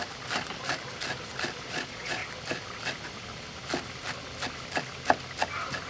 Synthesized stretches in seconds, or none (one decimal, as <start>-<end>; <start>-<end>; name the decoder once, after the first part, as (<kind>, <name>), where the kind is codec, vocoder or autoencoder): 1.6-2.2 (vocoder, Vocos)